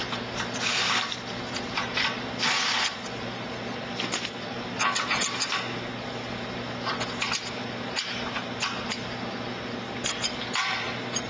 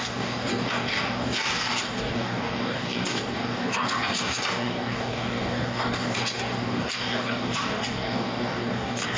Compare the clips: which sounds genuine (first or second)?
first